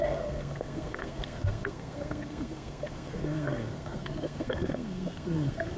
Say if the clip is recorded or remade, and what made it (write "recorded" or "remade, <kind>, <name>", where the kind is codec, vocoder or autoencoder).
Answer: remade, codec, SNAC